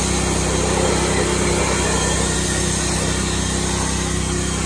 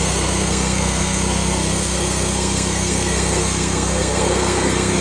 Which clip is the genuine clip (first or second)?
first